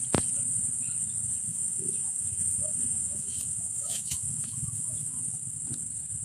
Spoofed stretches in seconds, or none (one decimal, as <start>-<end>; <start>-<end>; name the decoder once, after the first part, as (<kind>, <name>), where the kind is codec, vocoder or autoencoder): 1.5-5.2 (autoencoder, DAC-VAE)